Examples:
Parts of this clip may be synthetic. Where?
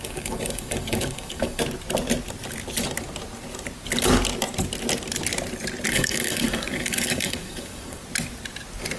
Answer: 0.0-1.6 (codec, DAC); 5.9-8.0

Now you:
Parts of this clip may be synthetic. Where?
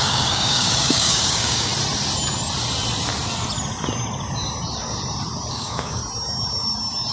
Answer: 0.0-1.7 (codec, DAC); 5.5-6.0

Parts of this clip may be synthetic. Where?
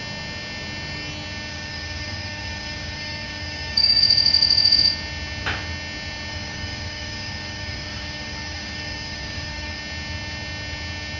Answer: 1.5-4.0 (codec, DAC); 6.3-9.8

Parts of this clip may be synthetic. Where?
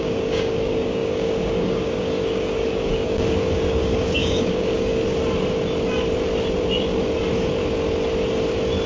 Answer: 0.0-5.0 (codec, DAC)